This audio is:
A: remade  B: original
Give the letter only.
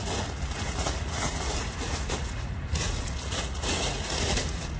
A